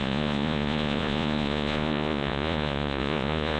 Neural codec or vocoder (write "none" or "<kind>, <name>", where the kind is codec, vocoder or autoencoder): vocoder, Vocos